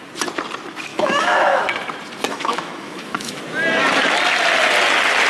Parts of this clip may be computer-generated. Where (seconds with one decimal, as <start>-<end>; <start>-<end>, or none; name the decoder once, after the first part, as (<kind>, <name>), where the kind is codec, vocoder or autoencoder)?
0.9-1.6 (autoencoder, DAC-VAE); 2.3-3.4